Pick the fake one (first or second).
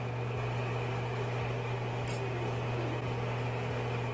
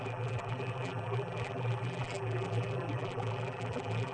second